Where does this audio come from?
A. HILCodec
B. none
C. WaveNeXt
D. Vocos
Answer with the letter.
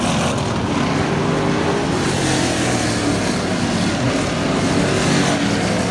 B